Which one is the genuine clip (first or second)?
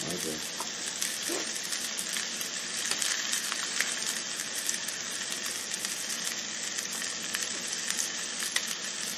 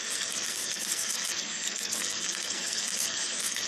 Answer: first